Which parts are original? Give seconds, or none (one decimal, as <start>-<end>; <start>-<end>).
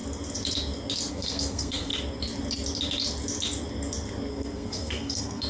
0.0-1.1; 1.9-4.3